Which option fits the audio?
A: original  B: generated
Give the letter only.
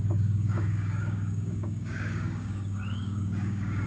B